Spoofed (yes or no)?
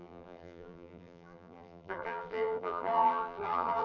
yes